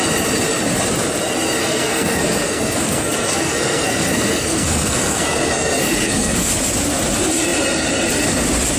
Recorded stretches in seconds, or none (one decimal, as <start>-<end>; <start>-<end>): 0.0-1.6; 6.5-8.8